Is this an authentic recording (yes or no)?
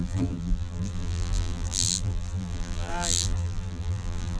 no